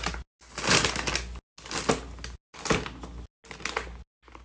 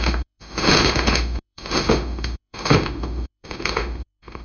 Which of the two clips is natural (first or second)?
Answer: first